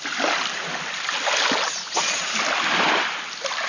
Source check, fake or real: real